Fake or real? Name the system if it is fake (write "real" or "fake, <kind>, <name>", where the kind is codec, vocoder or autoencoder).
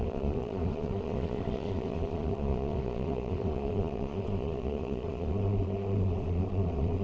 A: fake, vocoder, Vocos